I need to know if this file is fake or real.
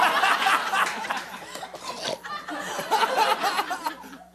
real